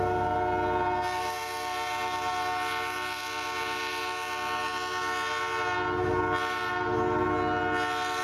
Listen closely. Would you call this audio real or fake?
real